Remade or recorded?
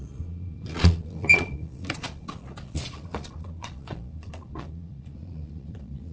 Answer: remade